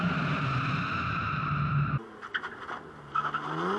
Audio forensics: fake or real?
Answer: real